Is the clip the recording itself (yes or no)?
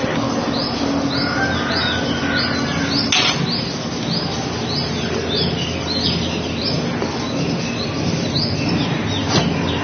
yes